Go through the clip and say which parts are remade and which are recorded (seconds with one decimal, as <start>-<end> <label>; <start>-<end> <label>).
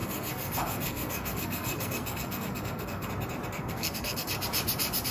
0.0-3.1 remade; 3.1-3.6 recorded; 3.6-4.3 remade; 4.3-5.1 recorded